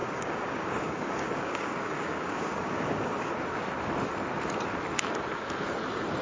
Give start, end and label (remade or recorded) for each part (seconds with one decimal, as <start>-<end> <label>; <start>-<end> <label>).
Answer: 0.0-3.3 remade; 3.3-6.2 recorded